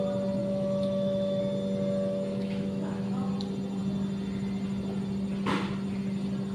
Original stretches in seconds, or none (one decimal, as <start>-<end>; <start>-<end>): 0.0-0.4; 1.4-2.3; 3.3-6.5